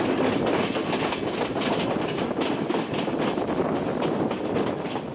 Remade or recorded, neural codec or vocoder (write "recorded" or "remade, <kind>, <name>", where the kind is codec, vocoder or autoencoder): recorded